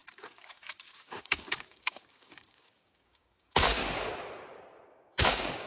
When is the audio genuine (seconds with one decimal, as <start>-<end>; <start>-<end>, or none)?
3.8-4.9